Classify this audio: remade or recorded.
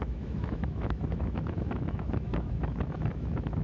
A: remade